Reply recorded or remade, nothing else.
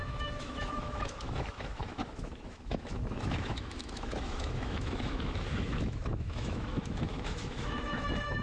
remade